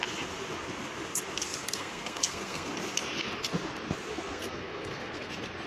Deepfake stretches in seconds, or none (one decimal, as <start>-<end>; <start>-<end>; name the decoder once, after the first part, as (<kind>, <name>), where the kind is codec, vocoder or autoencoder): 1.6-2.7 (codec, SNAC); 4.1-5.3